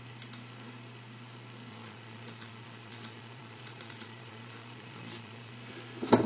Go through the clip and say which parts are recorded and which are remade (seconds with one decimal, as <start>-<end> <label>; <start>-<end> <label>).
0.0-1.7 recorded; 1.7-5.5 remade; 5.5-6.3 recorded